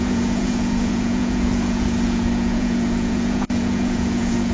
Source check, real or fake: fake